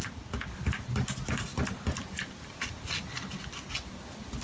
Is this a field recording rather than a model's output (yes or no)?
yes